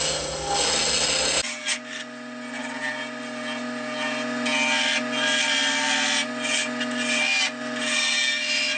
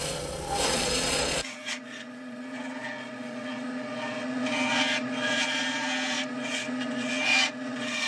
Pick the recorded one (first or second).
first